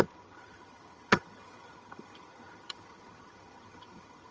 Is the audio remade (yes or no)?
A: yes